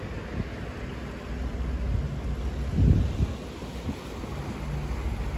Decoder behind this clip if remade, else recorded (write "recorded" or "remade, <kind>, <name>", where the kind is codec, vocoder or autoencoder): recorded